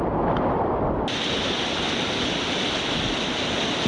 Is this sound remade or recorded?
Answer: recorded